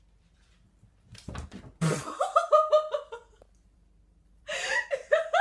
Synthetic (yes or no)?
yes